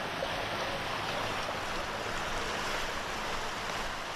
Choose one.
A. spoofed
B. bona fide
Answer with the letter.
B